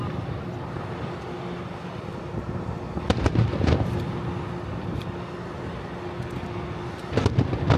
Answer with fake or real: real